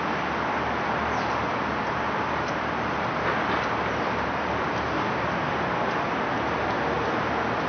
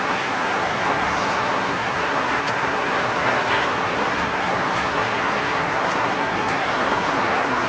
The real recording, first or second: first